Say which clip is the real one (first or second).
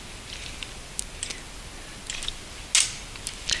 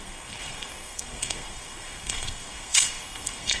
first